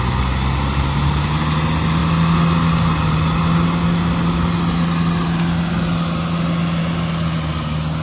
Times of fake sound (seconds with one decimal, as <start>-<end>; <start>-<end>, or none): none